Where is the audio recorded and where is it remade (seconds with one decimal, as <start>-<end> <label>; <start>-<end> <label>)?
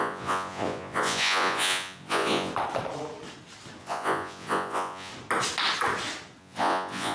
0.0-2.5 remade; 2.5-3.8 recorded; 3.8-5.1 remade; 5.1-6.4 recorded; 6.4-7.1 remade